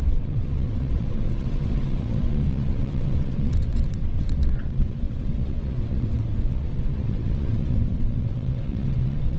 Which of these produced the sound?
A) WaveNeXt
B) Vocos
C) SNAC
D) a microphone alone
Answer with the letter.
A